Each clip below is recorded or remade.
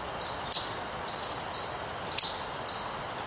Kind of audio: recorded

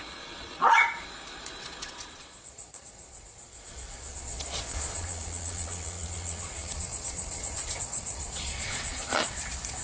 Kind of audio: remade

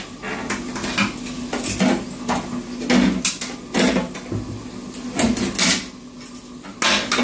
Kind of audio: recorded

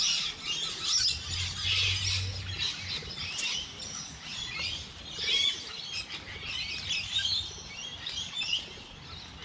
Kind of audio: recorded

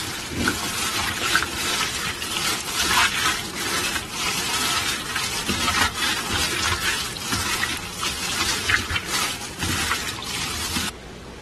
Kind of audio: remade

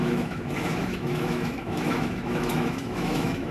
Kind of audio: remade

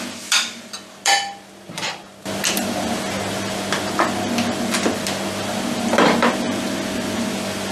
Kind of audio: recorded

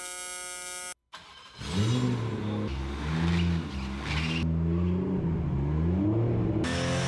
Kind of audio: recorded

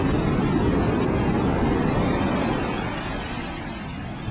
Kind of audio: recorded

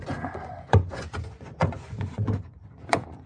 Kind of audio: remade